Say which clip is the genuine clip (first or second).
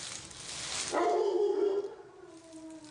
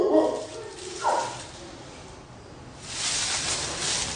first